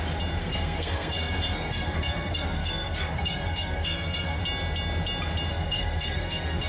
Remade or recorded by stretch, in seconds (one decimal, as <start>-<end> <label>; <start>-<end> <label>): 0.0-0.4 recorded; 0.4-4.4 remade; 4.4-5.5 recorded; 5.5-6.7 remade